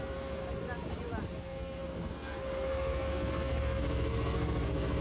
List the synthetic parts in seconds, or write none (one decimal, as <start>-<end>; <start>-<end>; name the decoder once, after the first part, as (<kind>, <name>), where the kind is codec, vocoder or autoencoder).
0.0-0.4 (codec, SNAC); 1.4-5.0